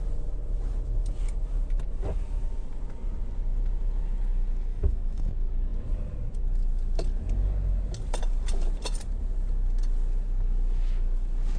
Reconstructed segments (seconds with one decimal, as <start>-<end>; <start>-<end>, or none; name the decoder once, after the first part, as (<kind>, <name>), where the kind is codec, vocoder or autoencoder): 4.7-5.3 (autoencoder, DAC-VAE)